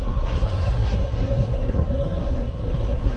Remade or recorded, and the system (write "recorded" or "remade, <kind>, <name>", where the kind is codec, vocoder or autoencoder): remade, codec, SNAC